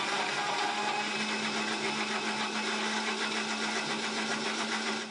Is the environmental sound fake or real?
real